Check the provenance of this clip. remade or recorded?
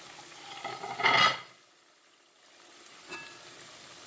recorded